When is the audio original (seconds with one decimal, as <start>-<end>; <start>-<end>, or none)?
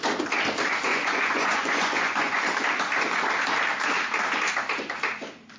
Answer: 0.0-0.9; 2.4-5.6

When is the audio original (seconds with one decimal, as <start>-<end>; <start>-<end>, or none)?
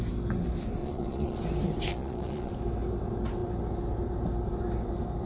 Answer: 0.0-0.8; 1.4-1.9; 2.5-5.3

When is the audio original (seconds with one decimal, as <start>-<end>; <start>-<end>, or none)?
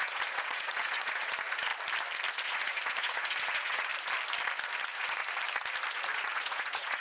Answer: 1.7-2.3; 3.9-4.8; 5.2-5.9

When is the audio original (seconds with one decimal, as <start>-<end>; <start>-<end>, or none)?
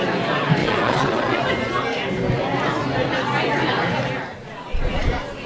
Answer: 0.0-0.6; 1.4-4.4; 5.1-5.5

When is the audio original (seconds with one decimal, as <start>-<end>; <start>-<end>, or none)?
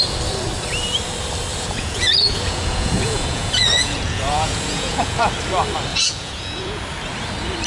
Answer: 0.0-1.5; 5.3-5.9; 6.8-7.7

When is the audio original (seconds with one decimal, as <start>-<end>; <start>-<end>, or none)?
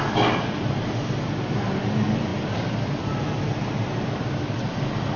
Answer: 0.0-5.2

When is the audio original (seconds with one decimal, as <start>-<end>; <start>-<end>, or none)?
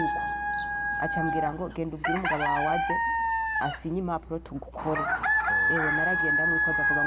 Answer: 0.0-7.1